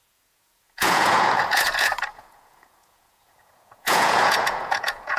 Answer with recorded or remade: remade